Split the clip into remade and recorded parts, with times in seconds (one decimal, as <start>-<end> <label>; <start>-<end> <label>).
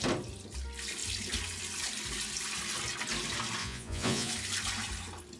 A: 0.0-3.6 recorded; 3.6-4.3 remade; 4.3-5.4 recorded